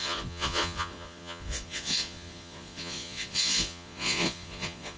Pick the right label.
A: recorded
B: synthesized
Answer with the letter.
B